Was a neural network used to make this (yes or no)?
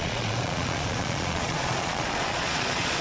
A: yes